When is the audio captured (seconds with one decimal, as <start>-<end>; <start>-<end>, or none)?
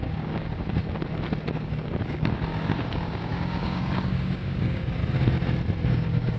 0.8-1.5; 5.0-5.9